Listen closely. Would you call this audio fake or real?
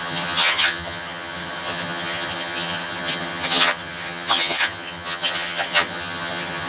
fake